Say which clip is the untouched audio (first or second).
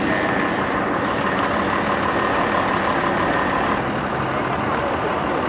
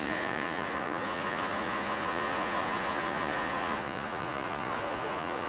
first